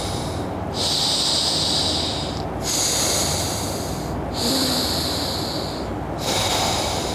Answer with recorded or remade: recorded